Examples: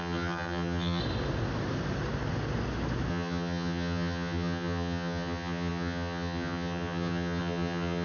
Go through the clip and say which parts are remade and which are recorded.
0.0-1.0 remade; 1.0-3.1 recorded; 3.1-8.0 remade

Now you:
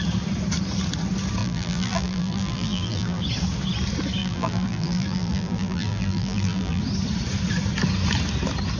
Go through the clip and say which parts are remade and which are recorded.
0.0-1.4 recorded; 1.4-3.2 remade; 3.2-4.2 recorded; 4.2-6.8 remade; 6.8-8.8 recorded

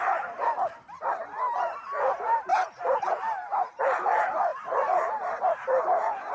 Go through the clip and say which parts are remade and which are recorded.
0.0-6.3 remade

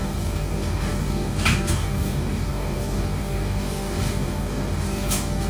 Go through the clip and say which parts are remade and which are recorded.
0.0-5.5 remade

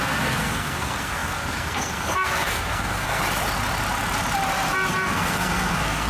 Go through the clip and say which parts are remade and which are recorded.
0.0-3.2 remade; 3.2-4.9 recorded; 4.9-6.1 remade

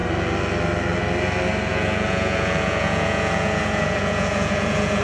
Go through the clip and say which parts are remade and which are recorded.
0.0-1.7 recorded; 1.7-5.0 remade